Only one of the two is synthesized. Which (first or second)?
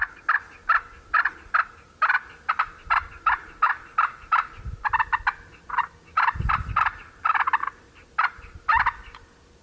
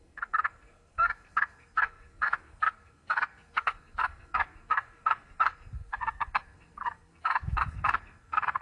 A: second